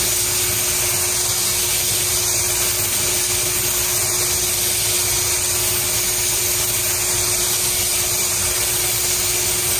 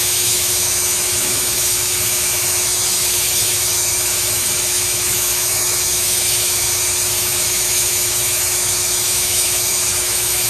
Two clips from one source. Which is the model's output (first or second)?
second